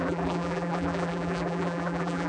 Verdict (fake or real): fake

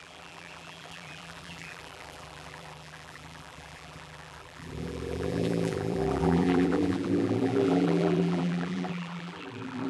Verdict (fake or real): fake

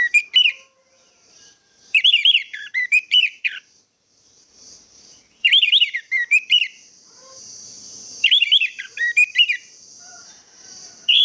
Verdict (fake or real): fake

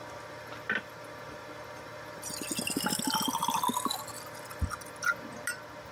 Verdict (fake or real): real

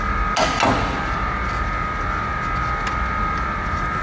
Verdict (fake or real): real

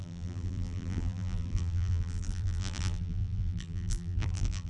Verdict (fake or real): fake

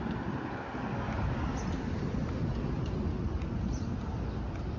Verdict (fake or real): real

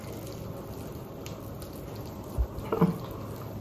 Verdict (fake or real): real